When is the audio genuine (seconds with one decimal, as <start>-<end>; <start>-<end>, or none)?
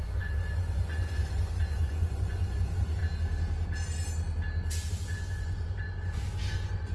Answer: 3.0-4.9